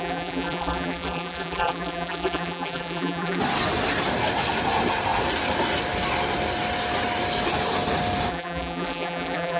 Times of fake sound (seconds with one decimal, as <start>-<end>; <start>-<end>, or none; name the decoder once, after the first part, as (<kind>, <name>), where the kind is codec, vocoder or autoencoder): 0.0-3.4 (vocoder, BigVGAN v2); 8.3-9.6